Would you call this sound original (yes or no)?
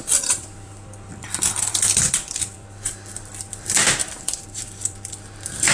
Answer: no